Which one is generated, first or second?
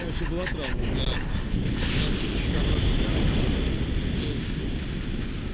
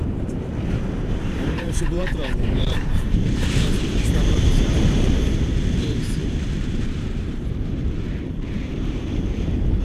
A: second